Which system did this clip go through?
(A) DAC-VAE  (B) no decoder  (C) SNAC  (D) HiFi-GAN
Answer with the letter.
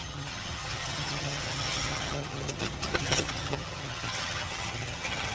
D